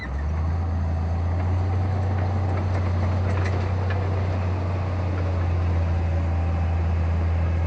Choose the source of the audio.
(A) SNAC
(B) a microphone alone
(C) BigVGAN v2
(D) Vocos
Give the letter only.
B